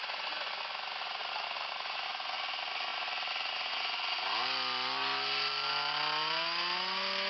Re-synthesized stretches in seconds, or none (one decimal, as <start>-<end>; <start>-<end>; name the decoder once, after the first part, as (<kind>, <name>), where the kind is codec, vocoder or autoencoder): 0.0-0.5 (vocoder, Vocos)